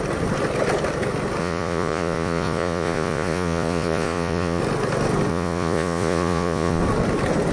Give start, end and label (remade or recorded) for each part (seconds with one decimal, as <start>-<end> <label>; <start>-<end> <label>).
0.0-1.4 recorded; 1.4-4.6 remade; 4.6-5.3 recorded; 5.3-6.8 remade; 6.8-7.5 recorded